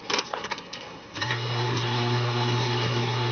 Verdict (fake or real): fake